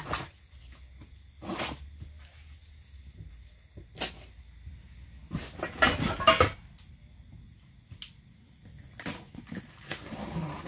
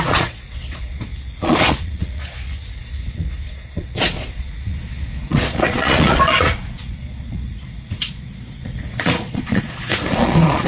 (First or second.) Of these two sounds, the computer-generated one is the second